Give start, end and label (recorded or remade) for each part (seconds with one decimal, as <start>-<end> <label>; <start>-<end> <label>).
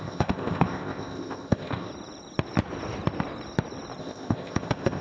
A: 0.0-1.9 remade; 1.9-4.0 recorded; 4.0-5.0 remade